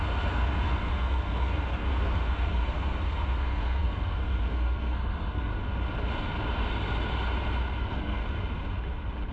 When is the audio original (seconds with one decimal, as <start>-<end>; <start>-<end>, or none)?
5.5-7.8; 8.2-9.3

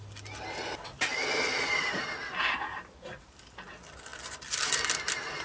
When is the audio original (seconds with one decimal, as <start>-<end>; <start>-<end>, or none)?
0.0-5.4

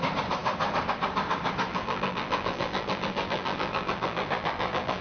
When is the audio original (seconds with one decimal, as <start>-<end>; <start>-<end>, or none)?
0.0-1.7